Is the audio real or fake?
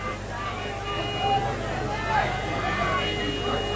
real